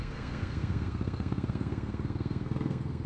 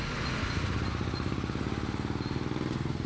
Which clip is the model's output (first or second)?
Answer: first